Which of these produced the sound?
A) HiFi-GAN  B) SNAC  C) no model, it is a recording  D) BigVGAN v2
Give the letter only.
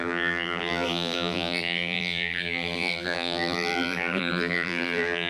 D